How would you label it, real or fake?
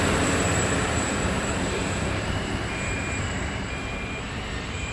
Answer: fake